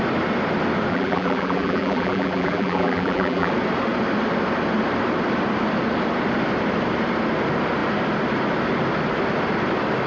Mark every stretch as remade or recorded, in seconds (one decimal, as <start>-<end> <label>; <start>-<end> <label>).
0.0-0.9 recorded; 0.9-3.5 remade; 3.5-10.1 recorded